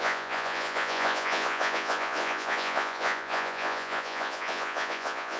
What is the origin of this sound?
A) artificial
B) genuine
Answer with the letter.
A